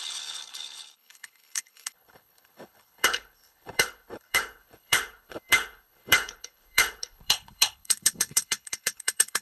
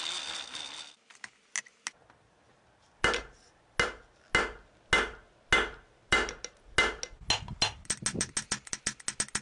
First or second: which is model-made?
first